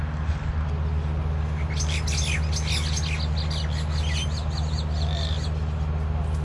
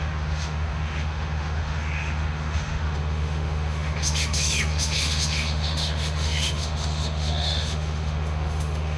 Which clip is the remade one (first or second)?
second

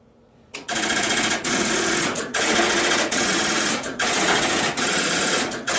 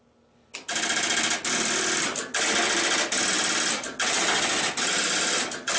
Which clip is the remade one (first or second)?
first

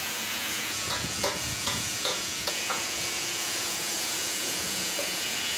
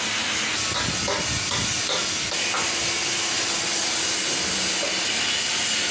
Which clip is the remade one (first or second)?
first